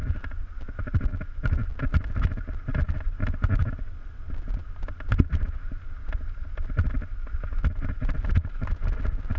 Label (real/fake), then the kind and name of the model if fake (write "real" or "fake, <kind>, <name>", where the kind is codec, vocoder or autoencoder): real